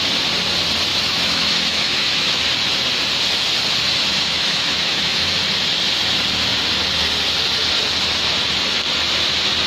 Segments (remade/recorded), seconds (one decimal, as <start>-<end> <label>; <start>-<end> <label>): 0.0-0.9 recorded; 0.9-2.4 remade; 2.4-4.1 recorded; 4.1-5.3 remade; 5.3-9.7 recorded